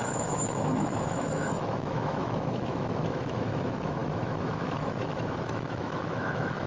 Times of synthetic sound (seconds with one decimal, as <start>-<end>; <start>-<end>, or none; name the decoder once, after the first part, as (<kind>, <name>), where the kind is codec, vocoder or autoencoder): 0.0-6.7 (autoencoder, DAC-VAE)